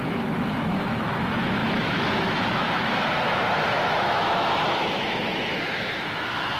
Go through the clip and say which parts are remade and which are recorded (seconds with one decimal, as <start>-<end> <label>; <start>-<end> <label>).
0.0-6.6 remade